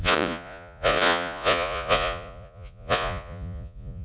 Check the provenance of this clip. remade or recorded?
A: remade